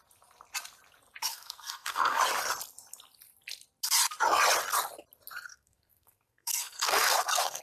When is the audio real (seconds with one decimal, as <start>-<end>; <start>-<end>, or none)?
0.0-1.3; 2.2-5.5